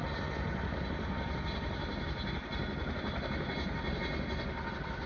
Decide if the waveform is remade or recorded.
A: recorded